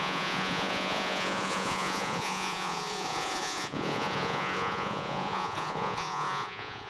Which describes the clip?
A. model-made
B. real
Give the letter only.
A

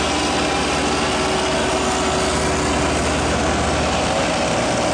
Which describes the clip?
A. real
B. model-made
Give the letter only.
A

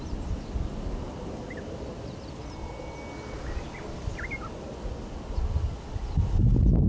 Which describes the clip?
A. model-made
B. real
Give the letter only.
B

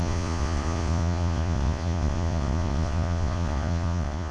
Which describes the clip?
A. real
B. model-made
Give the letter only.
B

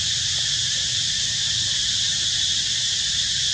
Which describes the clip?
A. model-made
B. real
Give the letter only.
B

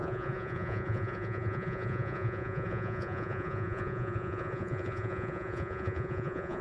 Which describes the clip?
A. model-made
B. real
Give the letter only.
A